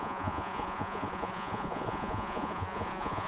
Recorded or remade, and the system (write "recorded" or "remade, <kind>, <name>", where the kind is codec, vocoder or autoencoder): remade, vocoder, Vocos